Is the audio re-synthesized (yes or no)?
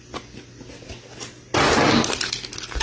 no